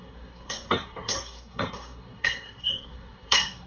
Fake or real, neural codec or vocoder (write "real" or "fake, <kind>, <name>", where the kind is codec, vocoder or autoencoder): fake, codec, SNAC